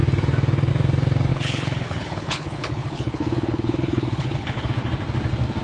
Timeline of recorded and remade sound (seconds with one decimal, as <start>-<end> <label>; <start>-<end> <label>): 0.0-1.3 recorded; 1.3-4.7 remade; 4.7-5.6 recorded